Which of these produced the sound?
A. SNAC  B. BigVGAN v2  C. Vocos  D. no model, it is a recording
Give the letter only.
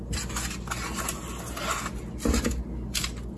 D